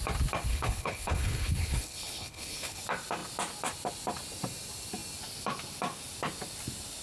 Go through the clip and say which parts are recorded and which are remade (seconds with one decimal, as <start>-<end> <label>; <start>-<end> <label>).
0.0-0.5 recorded; 0.5-2.8 remade; 2.8-7.0 recorded